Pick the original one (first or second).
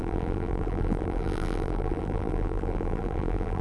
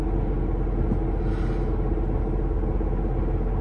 second